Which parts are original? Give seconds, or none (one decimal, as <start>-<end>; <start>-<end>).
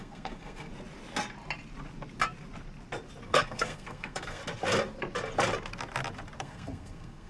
0.7-3.3; 4.4-6.4